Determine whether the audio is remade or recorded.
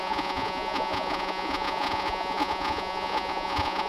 remade